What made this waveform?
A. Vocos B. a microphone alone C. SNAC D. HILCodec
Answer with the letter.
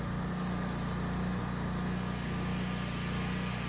B